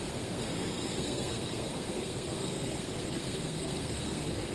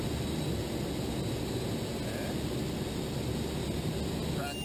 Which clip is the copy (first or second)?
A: first